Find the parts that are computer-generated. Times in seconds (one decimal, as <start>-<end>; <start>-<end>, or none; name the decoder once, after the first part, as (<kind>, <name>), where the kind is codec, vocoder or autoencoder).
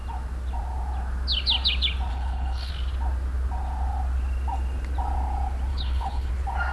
2.1-2.7 (codec, HILCodec); 5.7-6.3